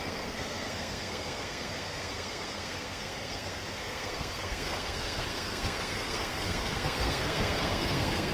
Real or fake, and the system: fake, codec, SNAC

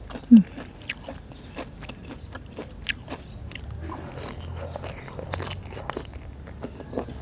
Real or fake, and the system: real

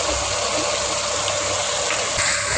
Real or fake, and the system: real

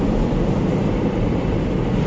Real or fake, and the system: fake, vocoder, BigVGAN v2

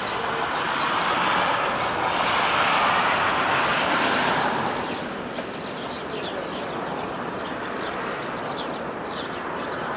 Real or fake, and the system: fake, vocoder, BigVGAN v2